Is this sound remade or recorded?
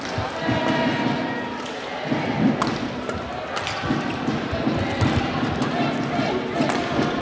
recorded